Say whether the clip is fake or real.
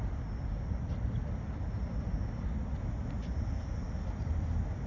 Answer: real